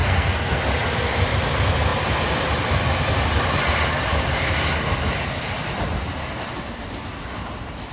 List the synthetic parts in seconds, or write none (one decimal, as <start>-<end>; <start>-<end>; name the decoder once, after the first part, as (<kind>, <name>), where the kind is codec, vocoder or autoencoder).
0.0-0.6 (codec, SNAC)